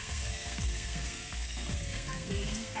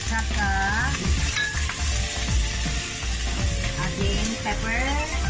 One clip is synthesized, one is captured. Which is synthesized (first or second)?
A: first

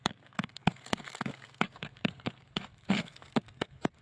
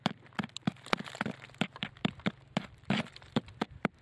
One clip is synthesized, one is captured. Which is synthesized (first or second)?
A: first